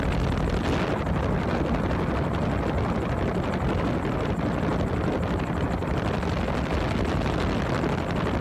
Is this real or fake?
real